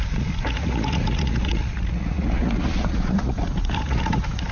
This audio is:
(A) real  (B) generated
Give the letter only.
B